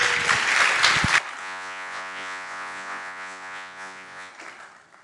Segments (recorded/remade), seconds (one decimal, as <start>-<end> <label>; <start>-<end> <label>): 0.0-1.4 recorded; 1.4-4.3 remade; 4.3-5.0 recorded